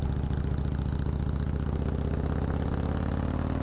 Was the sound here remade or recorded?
recorded